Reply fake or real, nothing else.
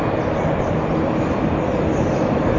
real